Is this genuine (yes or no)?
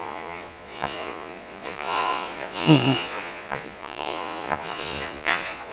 no